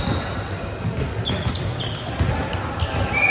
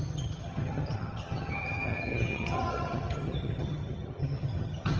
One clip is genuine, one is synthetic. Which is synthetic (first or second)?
second